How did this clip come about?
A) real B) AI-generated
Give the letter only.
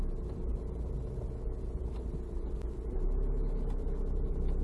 A